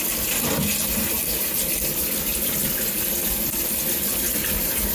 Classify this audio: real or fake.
fake